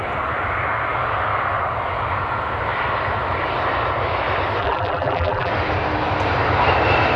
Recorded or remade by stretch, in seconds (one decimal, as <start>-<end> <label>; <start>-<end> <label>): 0.0-4.6 recorded; 4.6-5.5 remade; 5.5-7.2 recorded